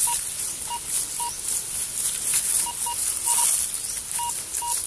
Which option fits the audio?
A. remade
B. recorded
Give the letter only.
B